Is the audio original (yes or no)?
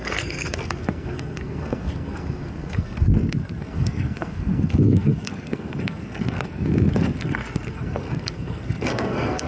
no